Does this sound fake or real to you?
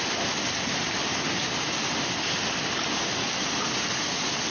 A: real